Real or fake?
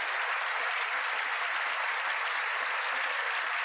real